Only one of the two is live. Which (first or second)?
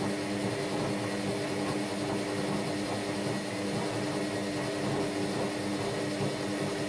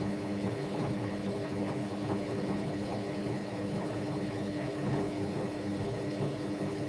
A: first